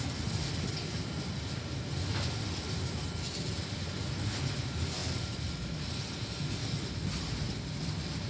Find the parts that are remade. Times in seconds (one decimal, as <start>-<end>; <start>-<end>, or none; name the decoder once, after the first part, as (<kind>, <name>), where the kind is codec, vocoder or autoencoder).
none